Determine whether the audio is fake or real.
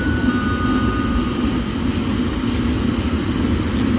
real